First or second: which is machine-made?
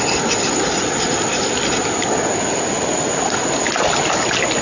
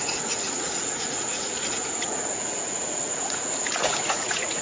second